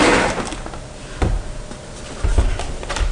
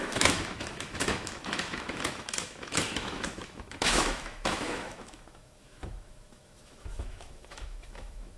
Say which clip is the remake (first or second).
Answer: second